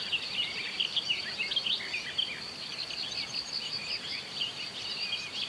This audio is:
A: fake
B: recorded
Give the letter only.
B